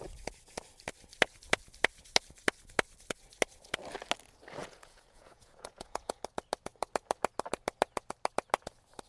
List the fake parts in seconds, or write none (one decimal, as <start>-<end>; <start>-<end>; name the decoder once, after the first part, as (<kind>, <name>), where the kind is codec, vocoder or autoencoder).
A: 4.6-6.2 (vocoder, Vocos)

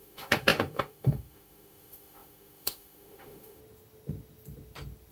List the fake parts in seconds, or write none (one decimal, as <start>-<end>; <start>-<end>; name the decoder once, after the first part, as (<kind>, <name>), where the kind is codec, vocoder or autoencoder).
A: 0.0-3.6 (autoencoder, DAC-VAE)

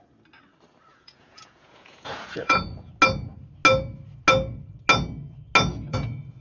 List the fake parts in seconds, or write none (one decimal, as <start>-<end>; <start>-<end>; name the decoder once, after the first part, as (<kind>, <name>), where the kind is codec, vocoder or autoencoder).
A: 0.9-2.9 (vocoder, Vocos); 5.7-6.4

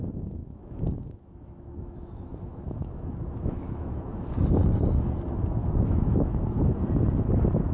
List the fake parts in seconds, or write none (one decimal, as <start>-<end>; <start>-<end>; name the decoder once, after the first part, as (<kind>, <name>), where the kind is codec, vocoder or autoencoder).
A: 0.4-4.3 (autoencoder, DAC-VAE); 5.6-6.7

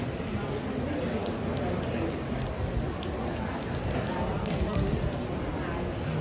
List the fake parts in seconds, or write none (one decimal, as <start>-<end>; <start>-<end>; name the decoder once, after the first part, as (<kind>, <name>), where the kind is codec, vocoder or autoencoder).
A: 4.4-4.9 (codec, SNAC)

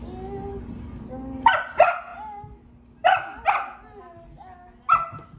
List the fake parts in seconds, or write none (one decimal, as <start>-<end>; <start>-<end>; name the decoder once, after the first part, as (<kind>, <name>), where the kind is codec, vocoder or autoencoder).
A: none

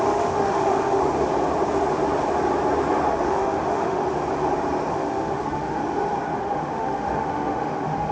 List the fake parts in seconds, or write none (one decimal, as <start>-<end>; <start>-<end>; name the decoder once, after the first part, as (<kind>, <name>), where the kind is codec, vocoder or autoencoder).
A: 0.0-1.0 (autoencoder, DAC-VAE); 3.1-4.0; 4.9-5.8; 6.4-8.1

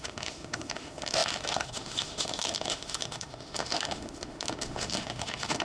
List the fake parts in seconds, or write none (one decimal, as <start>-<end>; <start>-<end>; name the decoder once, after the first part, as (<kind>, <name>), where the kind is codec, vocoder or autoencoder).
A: 0.0-5.6 (autoencoder, DAC-VAE)